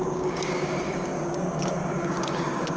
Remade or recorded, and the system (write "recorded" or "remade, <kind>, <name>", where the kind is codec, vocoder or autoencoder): remade, codec, DAC